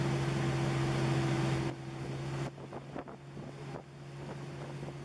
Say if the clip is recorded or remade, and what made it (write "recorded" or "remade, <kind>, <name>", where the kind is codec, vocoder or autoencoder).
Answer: recorded